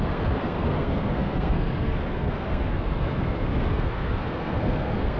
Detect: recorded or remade remade